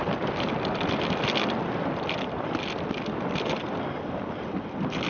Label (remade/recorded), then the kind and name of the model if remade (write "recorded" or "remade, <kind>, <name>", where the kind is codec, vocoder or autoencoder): recorded